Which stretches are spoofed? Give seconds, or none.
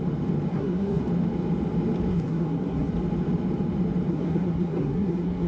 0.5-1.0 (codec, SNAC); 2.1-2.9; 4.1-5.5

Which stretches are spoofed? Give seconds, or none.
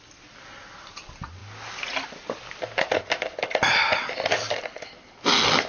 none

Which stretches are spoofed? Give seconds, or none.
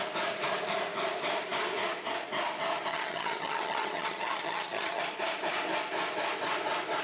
2.9-5.0 (vocoder, HiFi-GAN)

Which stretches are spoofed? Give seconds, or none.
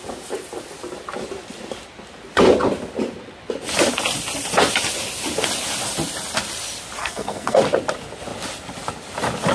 7.0-7.6 (codec, SNAC)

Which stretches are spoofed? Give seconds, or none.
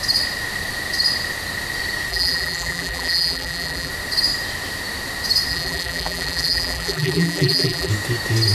2.1-3.9 (vocoder, BigVGAN v2); 5.5-7.9